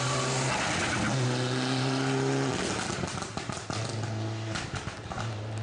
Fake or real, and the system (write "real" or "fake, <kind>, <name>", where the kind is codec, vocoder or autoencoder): real